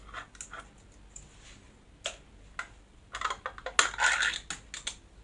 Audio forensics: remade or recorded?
recorded